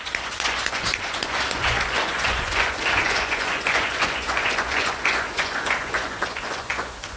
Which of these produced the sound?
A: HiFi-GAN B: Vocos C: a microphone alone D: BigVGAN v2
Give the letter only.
B